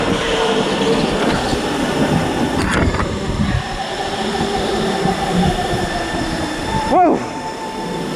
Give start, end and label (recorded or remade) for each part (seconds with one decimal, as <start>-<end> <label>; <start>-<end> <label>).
0.0-8.2 remade